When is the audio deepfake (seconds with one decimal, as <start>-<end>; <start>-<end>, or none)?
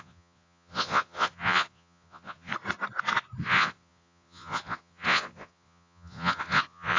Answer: 0.0-2.5; 3.4-7.0